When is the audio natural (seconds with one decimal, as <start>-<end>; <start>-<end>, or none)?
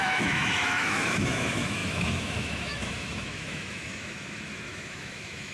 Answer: none